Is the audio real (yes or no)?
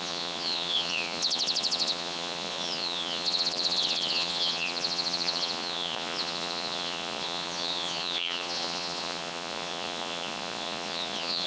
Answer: no